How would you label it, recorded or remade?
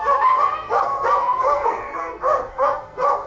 remade